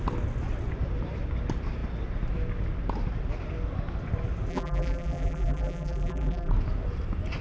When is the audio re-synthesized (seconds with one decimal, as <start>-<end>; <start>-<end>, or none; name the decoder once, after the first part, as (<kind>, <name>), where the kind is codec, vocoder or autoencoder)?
4.5-6.5 (vocoder, BigVGAN v2)